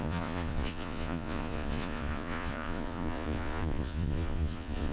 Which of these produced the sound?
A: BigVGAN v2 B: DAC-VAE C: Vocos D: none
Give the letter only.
C